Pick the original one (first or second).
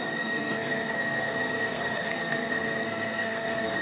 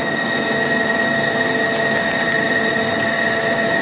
second